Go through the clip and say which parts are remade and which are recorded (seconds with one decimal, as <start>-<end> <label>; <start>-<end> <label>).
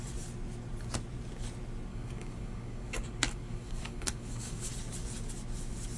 0.0-1.9 recorded; 1.9-4.7 remade; 4.7-6.0 recorded